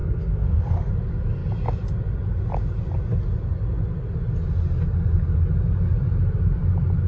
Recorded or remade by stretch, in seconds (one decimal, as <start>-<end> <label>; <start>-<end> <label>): 0.0-0.9 remade; 0.9-7.1 recorded